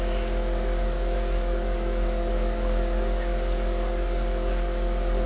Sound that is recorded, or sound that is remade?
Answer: remade